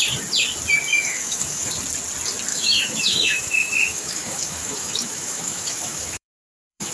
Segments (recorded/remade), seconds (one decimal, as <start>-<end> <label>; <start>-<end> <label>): 0.0-0.9 recorded; 0.9-1.7 remade; 1.7-2.5 recorded; 2.5-6.9 remade